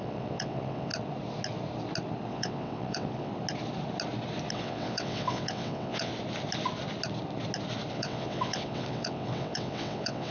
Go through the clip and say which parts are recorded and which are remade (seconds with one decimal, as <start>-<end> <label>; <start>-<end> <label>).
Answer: 0.0-0.9 remade; 0.9-2.3 recorded; 2.3-3.3 remade; 3.3-4.5 recorded; 4.5-6.1 remade; 6.1-7.9 recorded; 7.9-10.3 remade